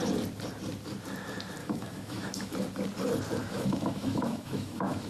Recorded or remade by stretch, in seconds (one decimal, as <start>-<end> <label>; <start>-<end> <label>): 0.0-1.6 recorded; 1.6-2.5 remade; 2.5-3.4 recorded; 3.4-5.1 remade